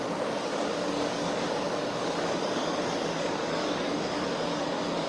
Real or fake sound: fake